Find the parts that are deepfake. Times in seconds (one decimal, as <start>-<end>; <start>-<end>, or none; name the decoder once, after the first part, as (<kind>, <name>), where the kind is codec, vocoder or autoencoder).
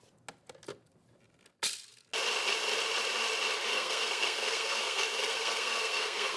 3.7-6.4 (codec, SNAC)